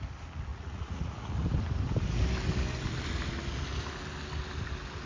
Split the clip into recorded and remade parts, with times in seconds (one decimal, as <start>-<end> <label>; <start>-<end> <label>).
0.0-0.5 recorded; 0.5-1.3 remade; 1.3-5.1 recorded